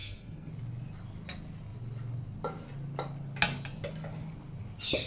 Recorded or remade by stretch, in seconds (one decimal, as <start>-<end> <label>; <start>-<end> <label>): 0.0-0.5 remade; 0.5-5.1 recorded